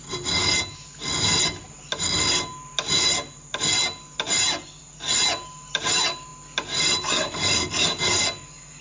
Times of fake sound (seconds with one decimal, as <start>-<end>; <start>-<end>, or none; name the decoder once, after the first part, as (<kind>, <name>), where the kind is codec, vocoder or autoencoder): none